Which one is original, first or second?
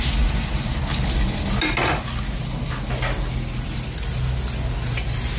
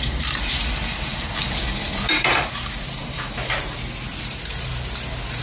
first